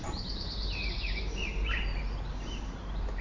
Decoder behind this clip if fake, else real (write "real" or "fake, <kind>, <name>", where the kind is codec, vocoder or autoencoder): fake, vocoder, BigVGAN v2